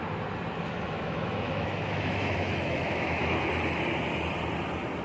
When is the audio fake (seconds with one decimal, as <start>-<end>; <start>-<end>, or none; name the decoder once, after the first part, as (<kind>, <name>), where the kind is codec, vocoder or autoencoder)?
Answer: 0.5-3.5 (autoencoder, DAC-VAE)